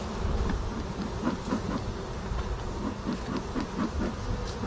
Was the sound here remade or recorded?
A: recorded